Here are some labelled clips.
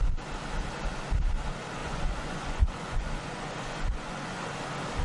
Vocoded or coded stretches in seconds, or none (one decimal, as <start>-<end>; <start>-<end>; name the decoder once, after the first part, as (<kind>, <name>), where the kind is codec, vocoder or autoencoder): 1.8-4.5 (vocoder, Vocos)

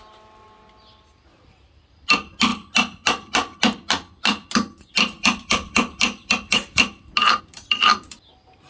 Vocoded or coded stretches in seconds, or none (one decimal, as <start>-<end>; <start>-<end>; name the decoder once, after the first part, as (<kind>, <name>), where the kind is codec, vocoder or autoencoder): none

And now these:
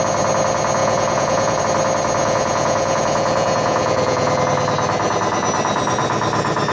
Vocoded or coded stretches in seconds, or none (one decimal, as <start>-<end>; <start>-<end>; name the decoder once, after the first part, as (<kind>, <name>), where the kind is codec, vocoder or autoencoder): 0.8-1.6 (vocoder, Vocos); 2.2-4.4